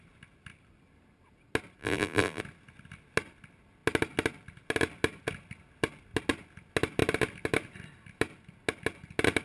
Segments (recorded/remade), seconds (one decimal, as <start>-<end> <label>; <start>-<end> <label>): 0.0-1.8 recorded; 1.8-2.4 remade; 2.4-9.4 recorded